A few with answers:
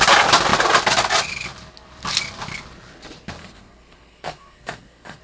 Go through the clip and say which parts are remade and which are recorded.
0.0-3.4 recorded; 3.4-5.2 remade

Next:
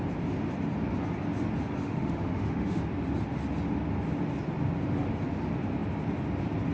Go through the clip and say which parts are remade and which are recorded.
0.0-1.8 recorded; 1.8-2.8 remade; 2.8-6.7 recorded

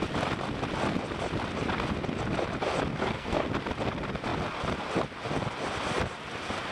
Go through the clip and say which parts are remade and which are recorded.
0.0-2.9 recorded; 2.9-3.5 remade; 3.5-6.7 recorded

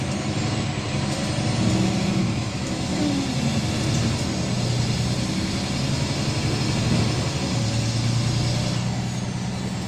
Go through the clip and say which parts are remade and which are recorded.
0.0-2.2 recorded; 2.2-3.0 remade; 3.0-9.9 recorded

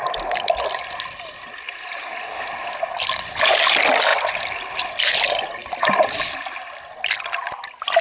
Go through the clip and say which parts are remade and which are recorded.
0.0-8.0 recorded

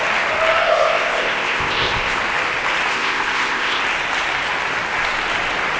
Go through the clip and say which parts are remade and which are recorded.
0.0-0.6 recorded; 0.6-2.2 remade; 2.2-2.9 recorded; 2.9-3.8 remade; 3.8-5.8 recorded

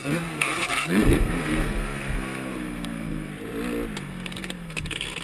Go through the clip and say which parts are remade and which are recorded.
0.0-3.3 remade; 3.3-4.0 recorded; 4.0-5.2 remade